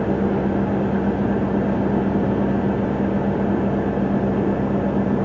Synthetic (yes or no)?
no